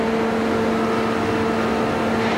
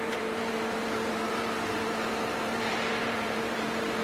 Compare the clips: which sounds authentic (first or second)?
first